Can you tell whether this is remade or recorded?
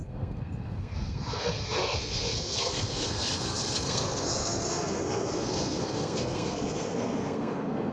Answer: remade